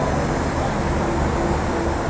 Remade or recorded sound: recorded